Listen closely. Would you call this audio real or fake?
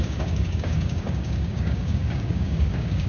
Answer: fake